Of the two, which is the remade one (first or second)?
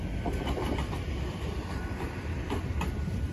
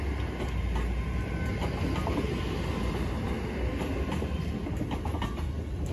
first